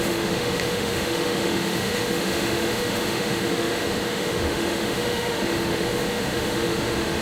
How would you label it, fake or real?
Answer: fake